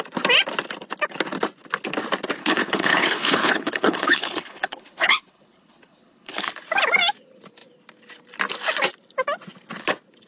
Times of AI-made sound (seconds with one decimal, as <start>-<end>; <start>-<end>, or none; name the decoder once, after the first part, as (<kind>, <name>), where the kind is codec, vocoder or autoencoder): 2.4-6.5 (codec, HILCodec)